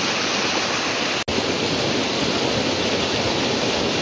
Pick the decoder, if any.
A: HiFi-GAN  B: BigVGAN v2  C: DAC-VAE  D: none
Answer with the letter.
D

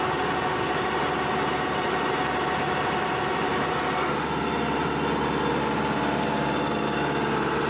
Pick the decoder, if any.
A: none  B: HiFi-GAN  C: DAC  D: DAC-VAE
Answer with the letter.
A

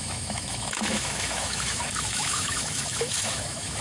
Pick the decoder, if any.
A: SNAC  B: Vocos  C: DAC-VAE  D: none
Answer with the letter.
C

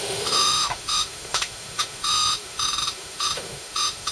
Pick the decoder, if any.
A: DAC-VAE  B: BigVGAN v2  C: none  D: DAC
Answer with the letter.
A